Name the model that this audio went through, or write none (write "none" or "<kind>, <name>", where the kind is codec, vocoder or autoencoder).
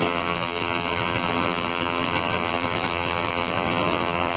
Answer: vocoder, BigVGAN v2